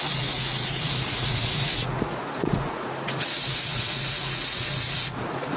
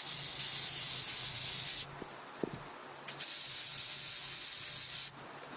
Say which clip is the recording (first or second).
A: second